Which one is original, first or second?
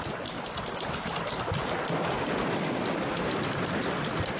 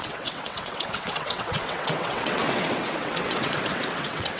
first